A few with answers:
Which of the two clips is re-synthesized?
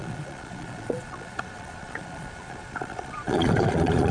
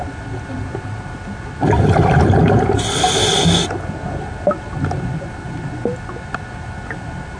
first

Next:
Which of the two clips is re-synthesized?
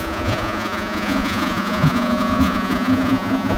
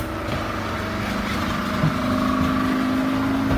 first